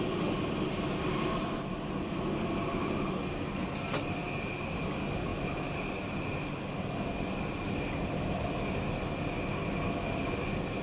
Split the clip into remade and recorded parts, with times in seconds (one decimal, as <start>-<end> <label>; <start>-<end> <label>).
0.0-10.8 recorded